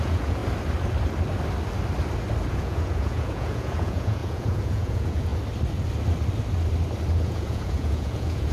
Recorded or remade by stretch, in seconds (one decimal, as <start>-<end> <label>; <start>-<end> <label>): 0.0-0.4 remade; 0.4-2.5 recorded; 2.5-5.3 remade; 5.3-7.1 recorded; 7.1-8.5 remade